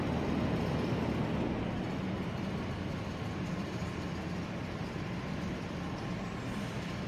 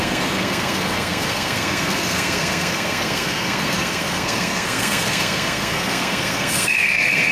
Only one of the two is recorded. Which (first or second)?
first